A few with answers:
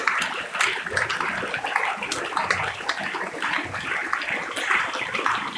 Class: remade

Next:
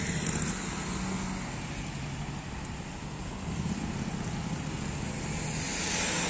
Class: recorded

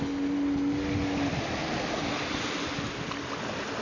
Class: recorded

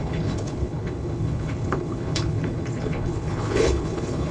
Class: remade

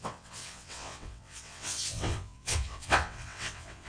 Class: remade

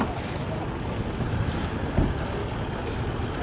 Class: recorded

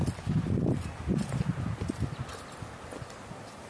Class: recorded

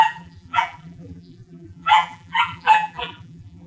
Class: remade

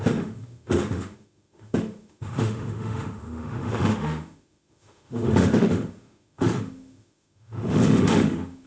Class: remade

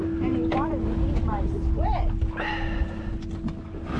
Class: recorded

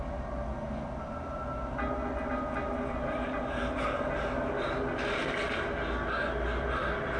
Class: recorded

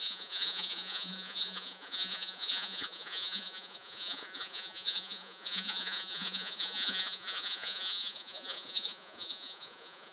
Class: remade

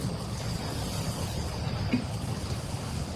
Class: remade